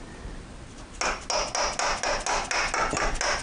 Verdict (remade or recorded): recorded